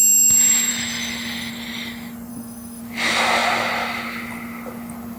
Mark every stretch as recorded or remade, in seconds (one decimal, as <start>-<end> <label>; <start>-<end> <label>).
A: 0.0-0.7 recorded; 0.7-1.5 remade; 1.5-2.3 recorded; 2.3-2.8 remade; 2.8-5.2 recorded